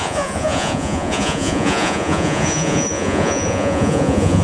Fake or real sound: fake